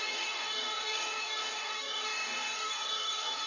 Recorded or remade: remade